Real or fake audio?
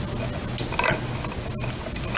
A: real